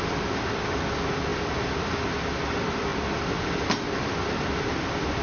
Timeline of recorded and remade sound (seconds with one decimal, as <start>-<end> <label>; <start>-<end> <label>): 0.0-5.2 recorded